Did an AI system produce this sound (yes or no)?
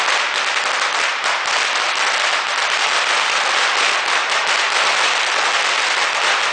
no